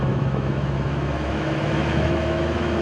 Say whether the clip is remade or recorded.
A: remade